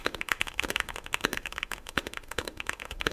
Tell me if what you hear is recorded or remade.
remade